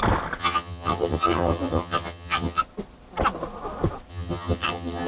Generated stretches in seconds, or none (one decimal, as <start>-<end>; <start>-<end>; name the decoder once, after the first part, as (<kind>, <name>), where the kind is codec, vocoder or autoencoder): 0.4-2.6 (vocoder, HiFi-GAN); 4.1-5.1